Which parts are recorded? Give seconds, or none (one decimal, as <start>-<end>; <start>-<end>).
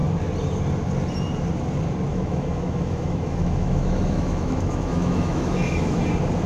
0.0-2.1; 6.0-6.5